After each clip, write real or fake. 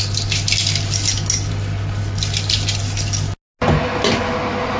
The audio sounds real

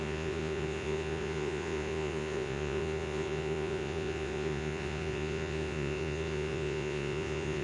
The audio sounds fake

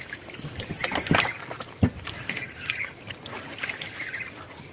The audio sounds real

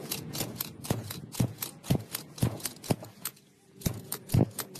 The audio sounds fake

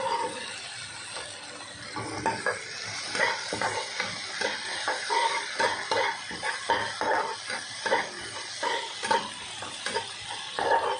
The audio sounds real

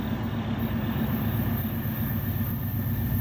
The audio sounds real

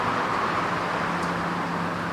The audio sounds real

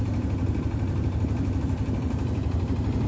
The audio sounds real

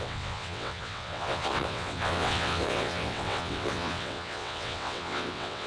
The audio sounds fake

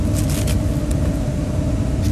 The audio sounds real